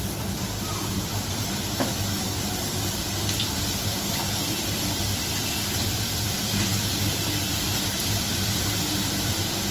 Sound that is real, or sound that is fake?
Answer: fake